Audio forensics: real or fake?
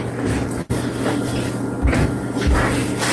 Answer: real